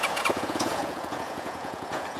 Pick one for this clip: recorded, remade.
remade